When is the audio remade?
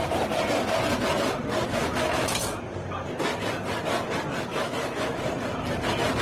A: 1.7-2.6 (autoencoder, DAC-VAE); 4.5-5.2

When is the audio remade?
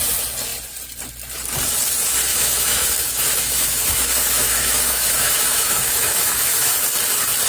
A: 2.3-6.7 (autoencoder, DAC-VAE)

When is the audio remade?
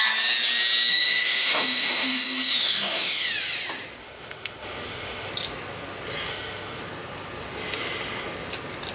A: 0.9-3.3 (autoencoder, DAC-VAE); 4.0-5.3; 6.3-6.8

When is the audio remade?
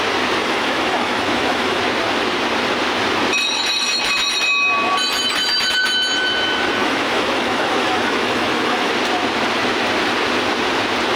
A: 0.4-1.8 (autoencoder, DAC-VAE); 6.8-8.9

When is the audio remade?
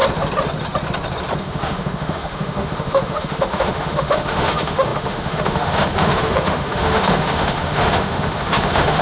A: 1.4-9.0 (autoencoder, DAC-VAE)